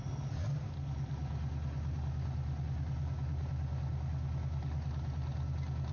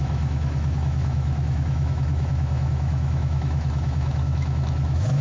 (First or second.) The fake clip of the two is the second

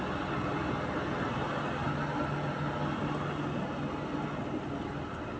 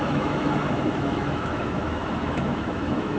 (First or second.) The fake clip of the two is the second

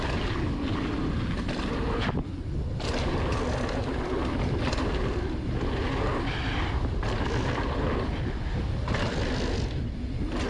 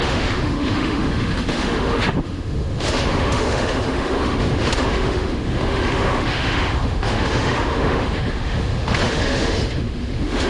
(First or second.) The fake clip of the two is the second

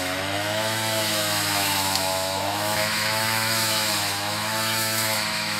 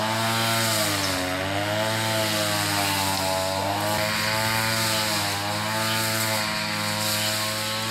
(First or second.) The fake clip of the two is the first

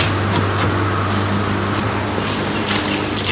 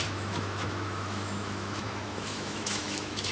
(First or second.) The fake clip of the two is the second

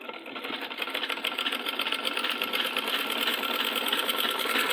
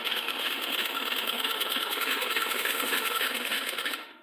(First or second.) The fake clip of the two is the second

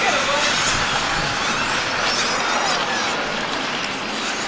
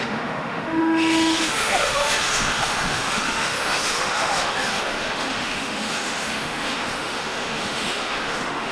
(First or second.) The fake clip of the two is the second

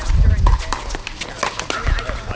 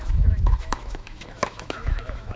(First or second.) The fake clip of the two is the second